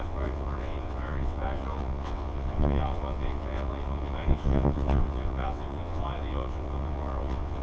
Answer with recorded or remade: remade